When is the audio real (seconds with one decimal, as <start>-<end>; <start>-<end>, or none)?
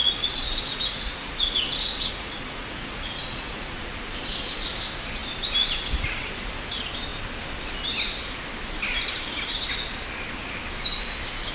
3.8-11.5